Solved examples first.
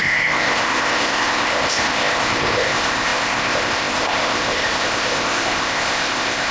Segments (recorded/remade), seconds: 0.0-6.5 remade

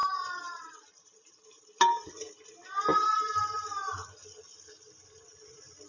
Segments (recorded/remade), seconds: 0.0-5.9 recorded